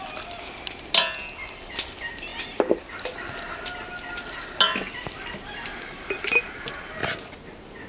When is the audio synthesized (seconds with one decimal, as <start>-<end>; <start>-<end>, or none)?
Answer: none

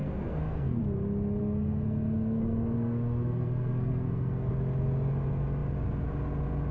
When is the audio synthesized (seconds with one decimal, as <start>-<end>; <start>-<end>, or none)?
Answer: 0.0-0.8; 1.4-4.5

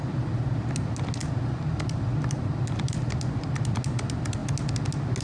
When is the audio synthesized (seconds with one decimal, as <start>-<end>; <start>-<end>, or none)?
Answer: 1.2-3.7